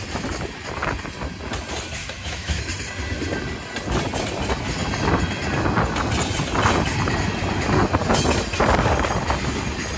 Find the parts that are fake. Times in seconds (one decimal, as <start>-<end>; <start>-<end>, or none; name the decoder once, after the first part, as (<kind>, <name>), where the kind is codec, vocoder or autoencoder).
2.0-2.6 (autoencoder, DAC-VAE)